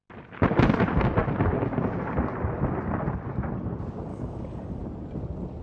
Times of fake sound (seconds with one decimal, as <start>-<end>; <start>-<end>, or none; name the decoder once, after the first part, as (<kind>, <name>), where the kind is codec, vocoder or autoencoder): 4.1-4.8 (codec, DAC)